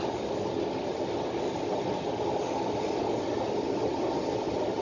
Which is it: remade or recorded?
recorded